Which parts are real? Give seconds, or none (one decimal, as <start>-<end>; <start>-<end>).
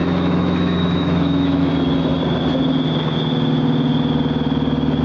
1.7-5.0